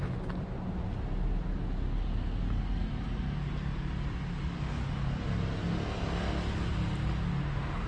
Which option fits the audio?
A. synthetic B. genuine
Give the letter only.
B